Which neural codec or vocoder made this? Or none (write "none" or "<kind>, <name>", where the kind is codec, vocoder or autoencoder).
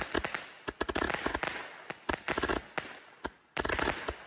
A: none